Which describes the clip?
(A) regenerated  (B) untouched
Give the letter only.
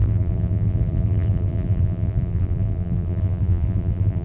A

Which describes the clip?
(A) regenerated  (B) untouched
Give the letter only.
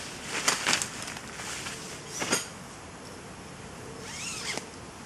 B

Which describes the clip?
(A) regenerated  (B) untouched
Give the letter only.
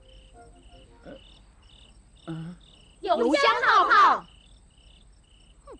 B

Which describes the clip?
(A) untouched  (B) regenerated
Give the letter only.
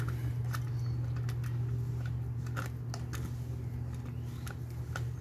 A